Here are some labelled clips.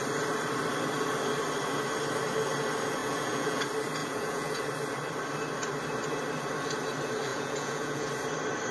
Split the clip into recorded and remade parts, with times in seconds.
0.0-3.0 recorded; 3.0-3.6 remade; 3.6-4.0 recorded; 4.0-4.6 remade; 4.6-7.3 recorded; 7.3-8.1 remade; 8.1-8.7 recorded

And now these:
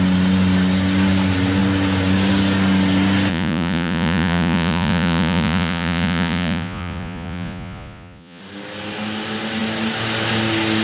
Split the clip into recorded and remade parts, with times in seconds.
0.0-3.3 recorded; 3.3-8.4 remade; 8.4-10.8 recorded

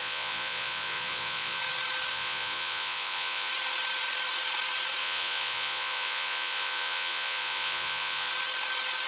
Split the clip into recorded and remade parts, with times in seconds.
0.0-1.6 remade; 1.6-2.1 recorded; 2.1-3.5 remade; 3.5-5.0 recorded; 5.0-8.3 remade; 8.3-9.1 recorded

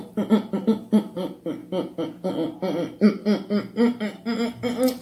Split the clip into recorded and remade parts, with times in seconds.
0.0-1.6 recorded; 1.6-2.3 remade; 2.3-5.0 recorded

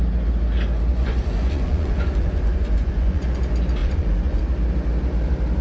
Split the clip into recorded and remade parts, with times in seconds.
0.0-0.9 recorded; 0.9-3.4 remade; 3.4-3.8 recorded; 3.8-4.4 remade; 4.4-5.6 recorded

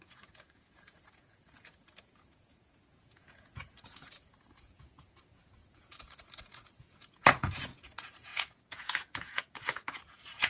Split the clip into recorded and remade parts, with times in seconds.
0.0-10.5 remade

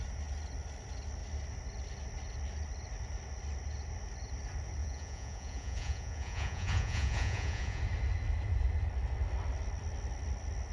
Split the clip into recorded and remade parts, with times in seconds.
0.0-4.8 recorded; 4.8-7.8 remade; 7.8-10.7 recorded